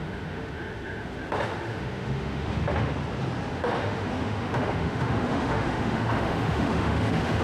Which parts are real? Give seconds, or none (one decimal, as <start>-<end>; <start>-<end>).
2.9-3.5